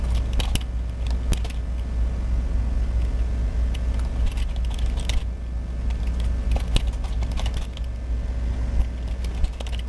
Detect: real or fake real